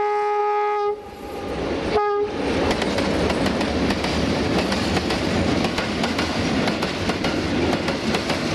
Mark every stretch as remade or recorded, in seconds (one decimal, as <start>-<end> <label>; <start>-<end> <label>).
0.0-8.5 recorded